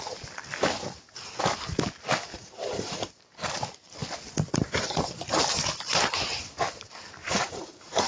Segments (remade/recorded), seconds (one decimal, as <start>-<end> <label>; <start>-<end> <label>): 0.0-2.3 recorded; 2.3-3.2 remade; 3.2-7.2 recorded; 7.2-8.1 remade